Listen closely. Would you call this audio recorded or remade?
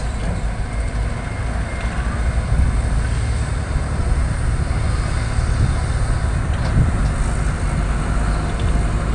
recorded